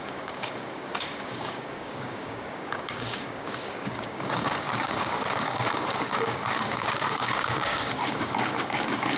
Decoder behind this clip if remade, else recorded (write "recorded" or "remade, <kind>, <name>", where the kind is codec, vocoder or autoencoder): remade, codec, DAC